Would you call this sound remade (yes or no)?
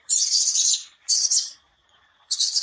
yes